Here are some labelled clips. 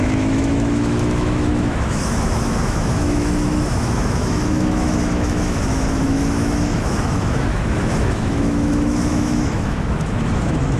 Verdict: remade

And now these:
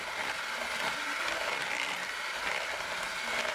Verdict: recorded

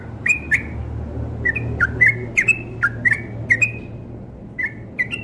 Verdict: recorded